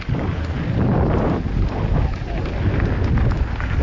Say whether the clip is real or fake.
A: real